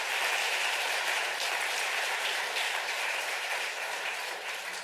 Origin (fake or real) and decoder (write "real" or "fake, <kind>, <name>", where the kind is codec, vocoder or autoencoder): fake, vocoder, BigVGAN v2